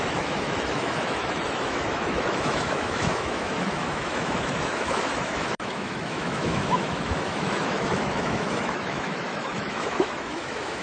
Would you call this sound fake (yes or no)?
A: yes